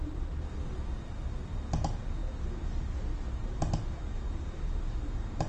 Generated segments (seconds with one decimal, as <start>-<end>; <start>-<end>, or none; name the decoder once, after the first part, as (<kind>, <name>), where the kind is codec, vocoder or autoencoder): none